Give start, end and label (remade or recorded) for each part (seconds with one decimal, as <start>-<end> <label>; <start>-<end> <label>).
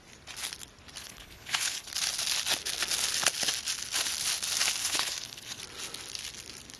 0.0-1.0 recorded; 1.0-1.9 remade; 1.9-4.8 recorded; 4.8-5.6 remade; 5.6-6.8 recorded